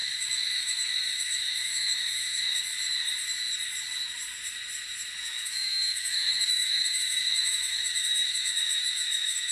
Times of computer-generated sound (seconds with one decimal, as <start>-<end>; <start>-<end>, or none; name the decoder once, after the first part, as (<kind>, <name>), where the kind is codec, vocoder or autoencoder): 0.0-2.7 (autoencoder, DAC-VAE); 5.2-9.5